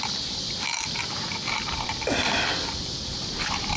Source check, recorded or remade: recorded